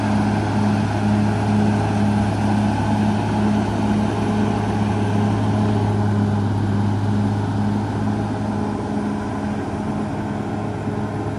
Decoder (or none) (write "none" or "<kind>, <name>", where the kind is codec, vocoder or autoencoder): none